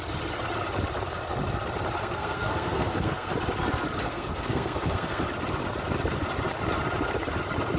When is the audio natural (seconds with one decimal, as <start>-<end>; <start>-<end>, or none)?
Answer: 0.0-2.0; 3.3-4.0; 5.2-7.8